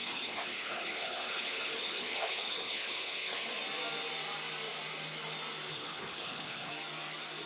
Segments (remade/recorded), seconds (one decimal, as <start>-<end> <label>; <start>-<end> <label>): 0.0-3.5 remade; 3.5-5.7 recorded; 5.7-6.7 remade; 6.7-7.5 recorded